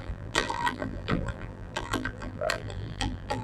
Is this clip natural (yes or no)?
no